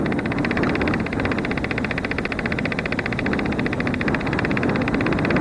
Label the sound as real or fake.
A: real